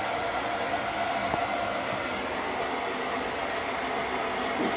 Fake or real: real